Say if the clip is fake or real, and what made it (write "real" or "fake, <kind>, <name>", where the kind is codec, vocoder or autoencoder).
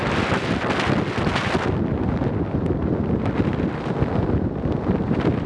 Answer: real